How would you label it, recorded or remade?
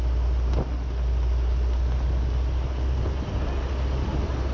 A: recorded